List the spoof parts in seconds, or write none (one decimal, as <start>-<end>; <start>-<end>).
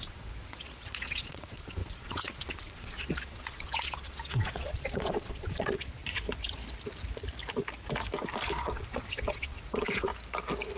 0.0-6.0; 8.5-10.1